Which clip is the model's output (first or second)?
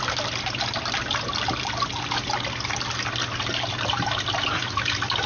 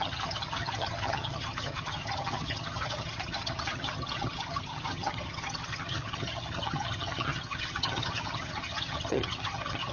second